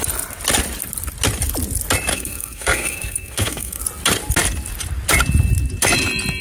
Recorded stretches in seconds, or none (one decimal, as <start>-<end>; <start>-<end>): 0.0-2.1; 3.8-6.4